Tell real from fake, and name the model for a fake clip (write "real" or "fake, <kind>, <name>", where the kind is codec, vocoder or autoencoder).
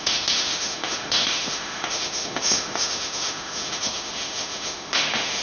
fake, autoencoder, DAC-VAE